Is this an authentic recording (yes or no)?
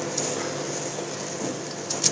yes